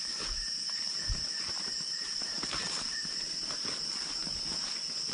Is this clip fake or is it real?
real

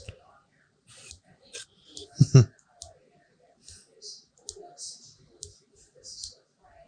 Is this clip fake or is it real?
real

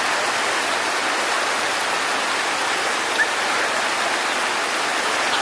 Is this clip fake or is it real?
real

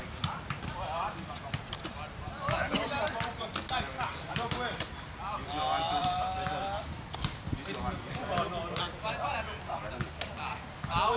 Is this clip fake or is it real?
real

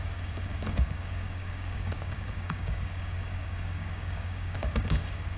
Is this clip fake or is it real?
fake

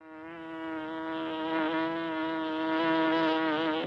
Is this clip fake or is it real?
real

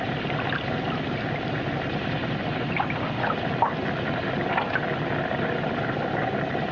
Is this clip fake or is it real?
real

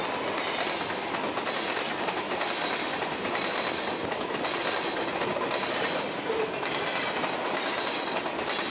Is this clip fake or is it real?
real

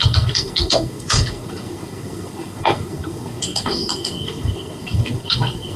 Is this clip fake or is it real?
fake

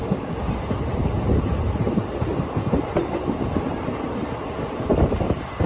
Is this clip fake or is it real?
real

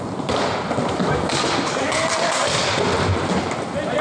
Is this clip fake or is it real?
real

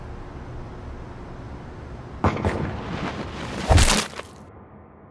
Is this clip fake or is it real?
real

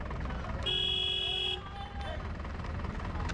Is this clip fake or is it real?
real